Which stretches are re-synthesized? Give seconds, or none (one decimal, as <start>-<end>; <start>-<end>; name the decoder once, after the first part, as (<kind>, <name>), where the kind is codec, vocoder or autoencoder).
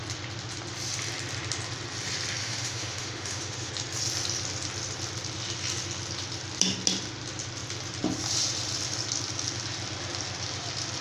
2.4-3.7 (autoencoder, DAC-VAE)